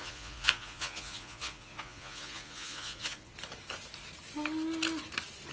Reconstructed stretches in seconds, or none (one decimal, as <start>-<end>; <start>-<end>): 0.0-3.3

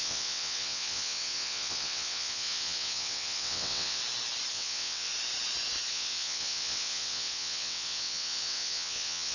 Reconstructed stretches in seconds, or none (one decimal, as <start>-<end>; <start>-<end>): 0.0-4.0; 4.5-5.1; 5.9-9.3